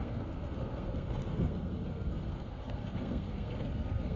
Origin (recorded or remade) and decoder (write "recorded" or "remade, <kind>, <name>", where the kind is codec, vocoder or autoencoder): remade, codec, SNAC